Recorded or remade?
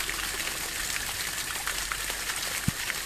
recorded